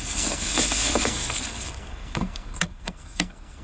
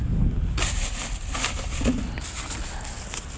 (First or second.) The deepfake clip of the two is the first